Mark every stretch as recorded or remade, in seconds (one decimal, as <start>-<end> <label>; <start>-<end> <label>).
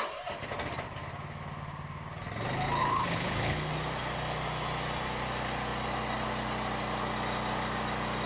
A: 0.0-2.8 recorded; 2.8-3.7 remade; 3.7-8.3 recorded